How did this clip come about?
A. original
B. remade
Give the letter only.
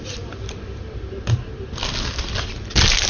A